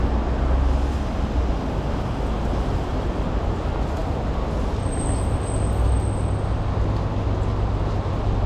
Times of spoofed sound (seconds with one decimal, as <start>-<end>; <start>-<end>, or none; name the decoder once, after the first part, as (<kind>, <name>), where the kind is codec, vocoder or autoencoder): 2.9-3.5 (vocoder, BigVGAN v2)